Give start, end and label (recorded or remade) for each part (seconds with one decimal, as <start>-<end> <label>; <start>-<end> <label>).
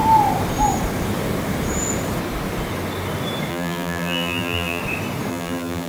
0.0-3.5 recorded; 3.5-4.8 remade; 4.8-5.3 recorded; 5.3-5.9 remade